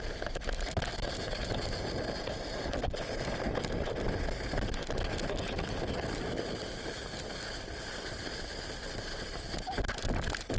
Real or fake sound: real